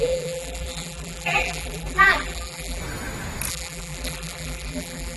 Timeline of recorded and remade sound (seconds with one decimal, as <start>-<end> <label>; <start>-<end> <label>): 0.0-2.8 remade; 2.8-3.5 recorded; 3.5-5.2 remade